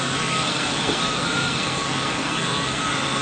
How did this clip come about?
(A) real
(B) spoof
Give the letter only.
B